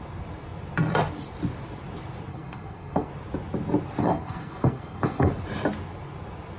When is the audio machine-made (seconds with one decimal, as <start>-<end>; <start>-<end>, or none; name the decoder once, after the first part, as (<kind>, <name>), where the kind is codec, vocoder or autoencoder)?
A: 2.3-3.1 (codec, SNAC); 4.0-5.3